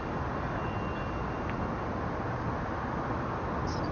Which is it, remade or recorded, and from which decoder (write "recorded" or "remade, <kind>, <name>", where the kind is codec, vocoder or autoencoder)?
recorded